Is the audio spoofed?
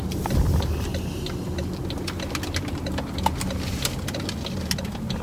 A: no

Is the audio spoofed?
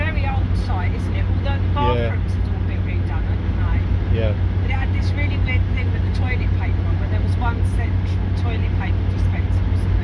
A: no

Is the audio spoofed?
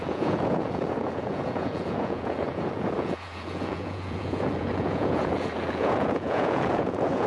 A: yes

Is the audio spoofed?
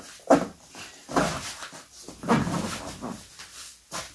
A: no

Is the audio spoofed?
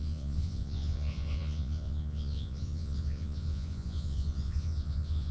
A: yes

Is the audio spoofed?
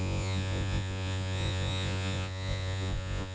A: yes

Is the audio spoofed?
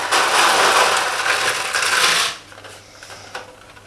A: no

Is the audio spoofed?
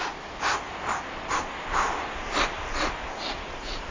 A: no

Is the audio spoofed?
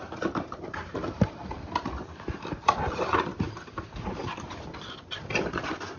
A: no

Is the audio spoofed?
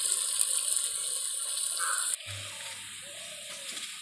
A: no